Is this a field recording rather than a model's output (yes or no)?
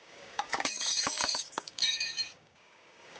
no